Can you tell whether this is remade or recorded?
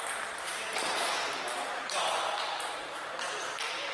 remade